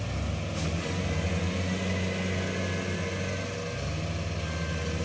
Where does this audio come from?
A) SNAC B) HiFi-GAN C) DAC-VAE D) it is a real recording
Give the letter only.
D